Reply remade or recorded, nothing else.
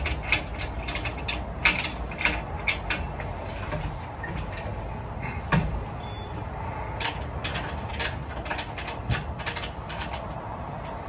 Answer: recorded